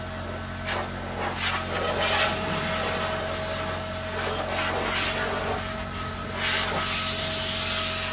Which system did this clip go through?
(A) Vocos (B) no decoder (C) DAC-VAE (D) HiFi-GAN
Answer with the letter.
B